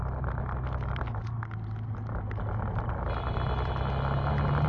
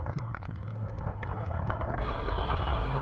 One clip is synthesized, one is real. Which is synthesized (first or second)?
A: second